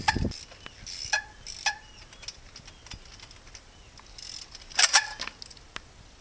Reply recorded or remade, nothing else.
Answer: recorded